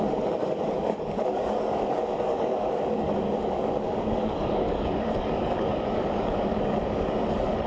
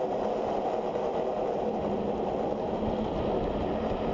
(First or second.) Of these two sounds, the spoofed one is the first